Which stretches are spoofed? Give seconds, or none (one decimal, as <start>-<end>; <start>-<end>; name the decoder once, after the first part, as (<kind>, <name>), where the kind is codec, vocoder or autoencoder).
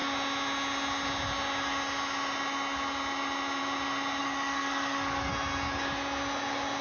4.2-5.3 (codec, DAC)